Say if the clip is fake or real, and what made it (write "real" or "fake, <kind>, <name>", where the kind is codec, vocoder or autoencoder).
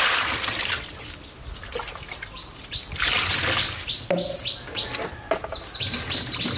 real